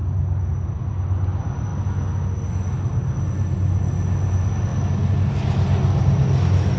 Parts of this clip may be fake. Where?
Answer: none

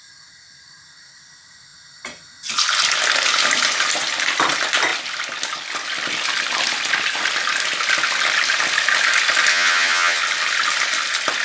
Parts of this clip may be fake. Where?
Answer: 9.5-10.2

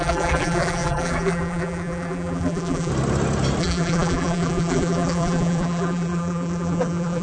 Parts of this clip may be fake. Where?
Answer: 0.0-2.9; 3.6-7.2

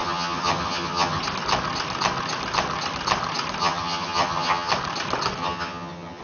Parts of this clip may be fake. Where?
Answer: 0.0-1.2; 3.6-4.7; 5.4-6.2

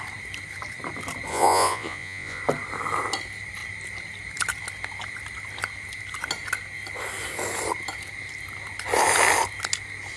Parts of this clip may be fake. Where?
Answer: 1.3-2.4

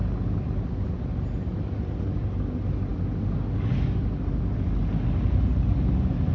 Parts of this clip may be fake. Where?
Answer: none

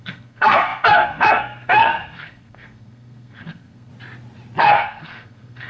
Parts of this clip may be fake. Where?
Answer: 0.0-3.9; 4.6-5.7

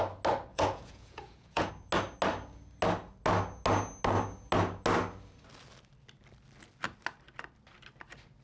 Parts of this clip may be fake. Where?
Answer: 0.5-1.7